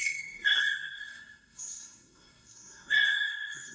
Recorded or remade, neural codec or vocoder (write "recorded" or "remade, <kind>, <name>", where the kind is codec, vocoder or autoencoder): remade, codec, SNAC